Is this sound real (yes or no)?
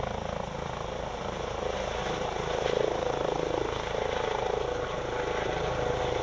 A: yes